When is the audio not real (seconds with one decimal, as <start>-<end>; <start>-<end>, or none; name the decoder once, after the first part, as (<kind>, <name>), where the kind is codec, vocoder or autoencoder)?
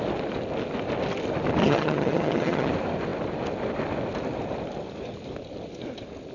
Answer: 1.6-2.7 (vocoder, HiFi-GAN)